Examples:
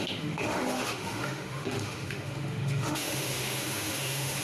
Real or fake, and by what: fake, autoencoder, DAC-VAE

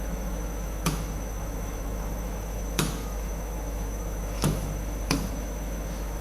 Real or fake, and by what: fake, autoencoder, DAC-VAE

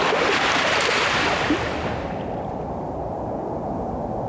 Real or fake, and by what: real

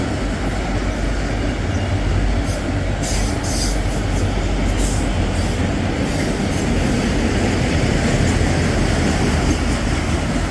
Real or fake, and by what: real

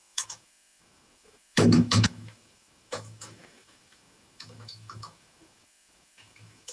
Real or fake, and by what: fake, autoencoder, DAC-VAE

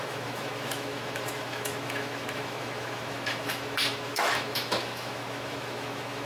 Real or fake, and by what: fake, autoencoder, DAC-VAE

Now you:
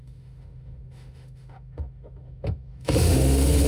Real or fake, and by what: fake, autoencoder, DAC-VAE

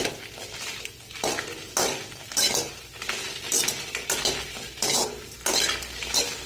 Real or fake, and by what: real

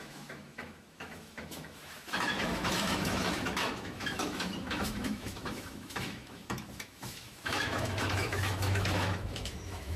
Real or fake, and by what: fake, autoencoder, DAC-VAE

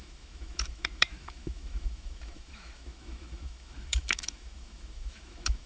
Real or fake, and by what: fake, autoencoder, DAC-VAE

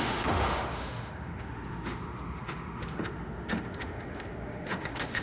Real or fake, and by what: fake, autoencoder, DAC-VAE